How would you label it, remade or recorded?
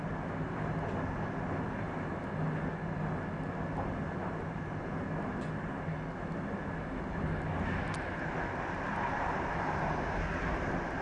recorded